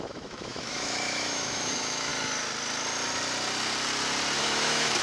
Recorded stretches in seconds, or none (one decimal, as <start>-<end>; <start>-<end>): 2.1-4.4